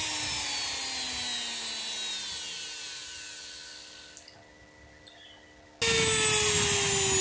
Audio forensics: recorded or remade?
recorded